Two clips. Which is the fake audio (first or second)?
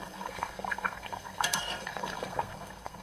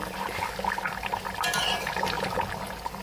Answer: first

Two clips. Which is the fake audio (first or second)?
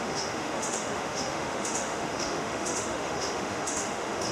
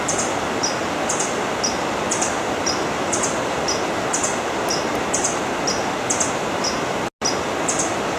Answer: first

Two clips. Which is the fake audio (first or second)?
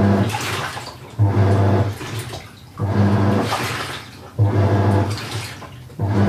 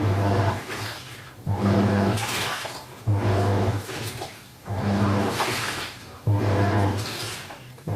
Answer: second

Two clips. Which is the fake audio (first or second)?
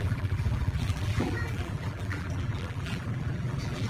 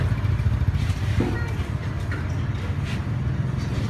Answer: first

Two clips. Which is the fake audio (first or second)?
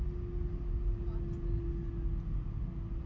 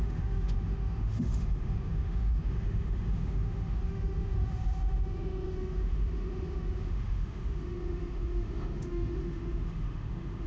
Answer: second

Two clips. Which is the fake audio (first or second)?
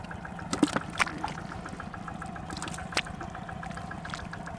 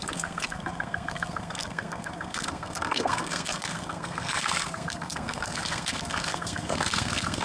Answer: second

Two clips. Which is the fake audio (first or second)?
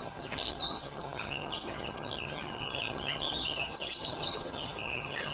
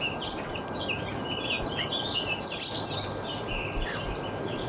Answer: first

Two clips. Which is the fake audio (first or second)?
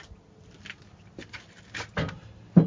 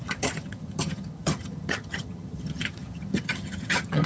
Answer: second